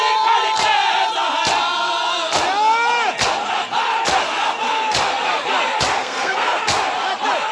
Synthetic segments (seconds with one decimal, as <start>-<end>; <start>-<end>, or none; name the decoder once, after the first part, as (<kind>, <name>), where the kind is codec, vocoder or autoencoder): 6.0-6.6 (codec, SNAC)